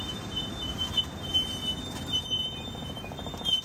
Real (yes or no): yes